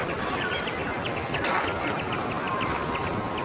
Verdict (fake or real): real